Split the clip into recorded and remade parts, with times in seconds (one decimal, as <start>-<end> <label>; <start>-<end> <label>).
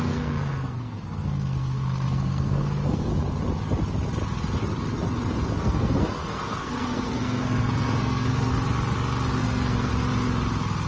0.0-3.1 remade; 3.1-5.6 recorded; 5.6-8.5 remade; 8.5-9.4 recorded; 9.4-9.9 remade; 9.9-10.9 recorded